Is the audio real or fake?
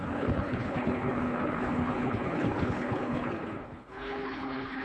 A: fake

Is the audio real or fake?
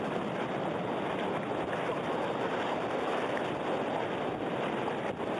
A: real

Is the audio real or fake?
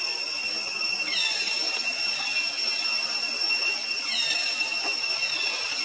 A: real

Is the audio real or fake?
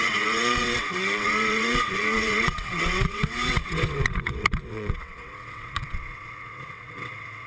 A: fake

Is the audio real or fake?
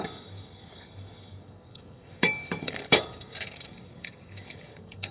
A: fake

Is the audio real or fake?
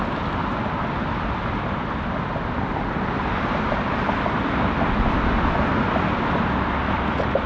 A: real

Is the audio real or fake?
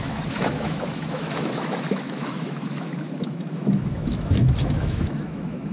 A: fake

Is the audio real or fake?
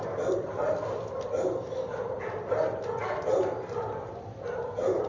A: real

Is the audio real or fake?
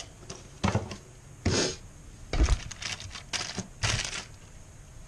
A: real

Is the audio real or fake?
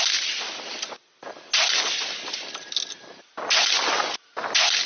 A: real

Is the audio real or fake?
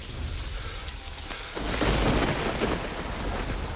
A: real